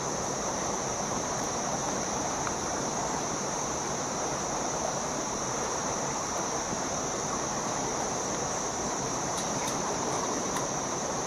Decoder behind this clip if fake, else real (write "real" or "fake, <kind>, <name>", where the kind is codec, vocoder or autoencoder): fake, vocoder, BigVGAN v2